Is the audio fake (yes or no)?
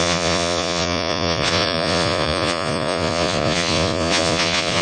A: yes